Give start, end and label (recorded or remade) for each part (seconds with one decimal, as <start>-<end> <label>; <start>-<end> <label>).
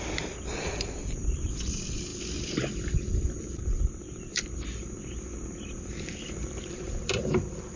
0.0-2.1 remade; 2.1-3.4 recorded; 3.4-7.8 remade